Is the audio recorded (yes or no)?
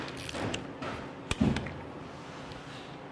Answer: yes